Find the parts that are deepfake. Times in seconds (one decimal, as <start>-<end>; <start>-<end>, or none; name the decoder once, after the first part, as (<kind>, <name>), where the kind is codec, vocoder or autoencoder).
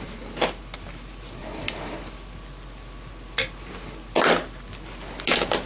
none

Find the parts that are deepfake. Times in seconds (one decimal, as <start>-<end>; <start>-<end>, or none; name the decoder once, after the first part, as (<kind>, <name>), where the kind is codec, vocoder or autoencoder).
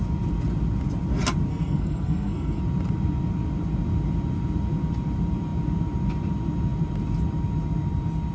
1.5-2.6 (codec, SNAC)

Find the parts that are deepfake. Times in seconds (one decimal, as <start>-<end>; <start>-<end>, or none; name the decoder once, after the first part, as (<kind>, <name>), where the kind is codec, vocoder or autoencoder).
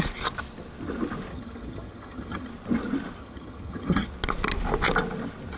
1.3-2.5 (vocoder, HiFi-GAN); 3.2-4.1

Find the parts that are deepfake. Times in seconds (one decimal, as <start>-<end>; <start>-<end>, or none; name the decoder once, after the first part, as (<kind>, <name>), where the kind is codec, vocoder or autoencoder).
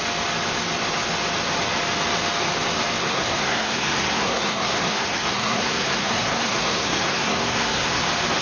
3.0-8.0 (codec, SNAC)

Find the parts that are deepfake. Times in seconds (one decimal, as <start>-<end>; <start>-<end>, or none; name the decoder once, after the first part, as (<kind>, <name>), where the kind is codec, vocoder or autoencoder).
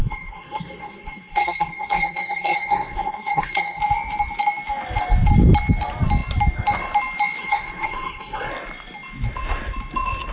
0.0-3.8 (codec, SNAC); 7.4-8.5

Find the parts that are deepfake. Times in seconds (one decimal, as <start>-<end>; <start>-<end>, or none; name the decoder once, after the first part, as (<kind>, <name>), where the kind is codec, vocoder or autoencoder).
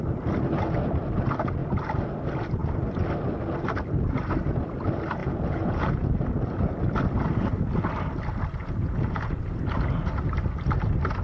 5.2-6.1 (vocoder, Vocos); 8.6-9.4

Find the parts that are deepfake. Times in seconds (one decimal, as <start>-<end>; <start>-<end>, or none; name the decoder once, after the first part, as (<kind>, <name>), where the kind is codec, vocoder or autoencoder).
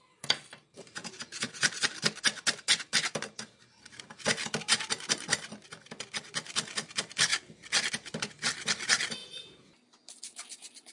1.0-1.7 (vocoder, Vocos); 9.2-9.7